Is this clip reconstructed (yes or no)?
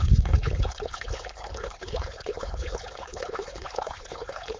yes